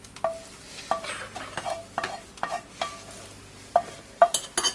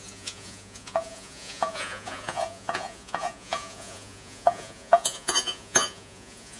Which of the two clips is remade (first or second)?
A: second